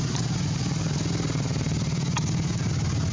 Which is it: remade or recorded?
recorded